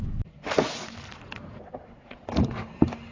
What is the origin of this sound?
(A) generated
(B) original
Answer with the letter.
B